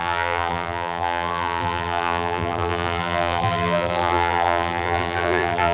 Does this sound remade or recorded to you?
remade